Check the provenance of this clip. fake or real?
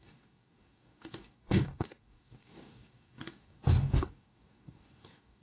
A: fake